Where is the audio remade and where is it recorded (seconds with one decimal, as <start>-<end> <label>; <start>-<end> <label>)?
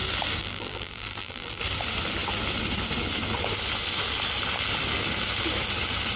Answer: 0.0-0.4 recorded; 0.4-1.6 remade; 1.6-6.2 recorded